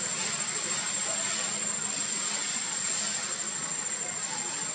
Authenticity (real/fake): real